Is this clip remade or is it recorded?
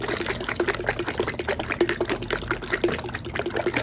recorded